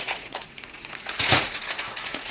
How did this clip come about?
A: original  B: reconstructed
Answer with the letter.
B